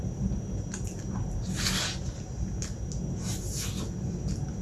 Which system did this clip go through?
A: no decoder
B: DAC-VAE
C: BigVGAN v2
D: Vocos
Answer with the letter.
A